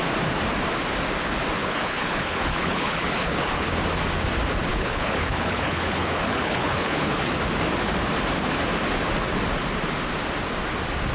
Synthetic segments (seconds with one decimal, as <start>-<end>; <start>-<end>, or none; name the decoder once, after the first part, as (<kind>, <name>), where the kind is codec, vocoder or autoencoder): 1.6-3.7 (codec, HILCodec); 4.7-7.3